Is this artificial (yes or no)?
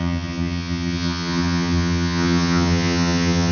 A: yes